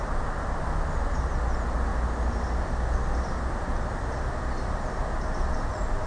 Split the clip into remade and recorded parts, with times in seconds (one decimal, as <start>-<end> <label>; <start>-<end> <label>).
0.0-6.1 recorded